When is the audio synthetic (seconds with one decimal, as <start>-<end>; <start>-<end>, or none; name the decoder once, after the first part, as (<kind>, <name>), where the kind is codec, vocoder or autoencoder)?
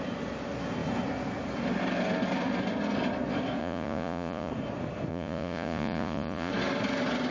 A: 3.6-4.5 (vocoder, Vocos); 5.1-6.5